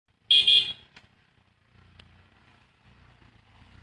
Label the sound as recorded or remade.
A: recorded